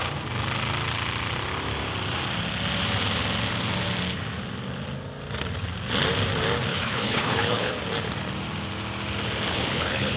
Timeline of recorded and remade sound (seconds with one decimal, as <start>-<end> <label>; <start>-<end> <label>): 0.0-6.7 recorded; 6.7-7.7 remade; 7.7-9.5 recorded; 9.5-10.2 remade